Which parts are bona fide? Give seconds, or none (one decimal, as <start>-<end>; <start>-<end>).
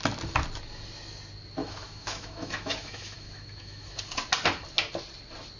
0.0-1.6; 4.0-5.6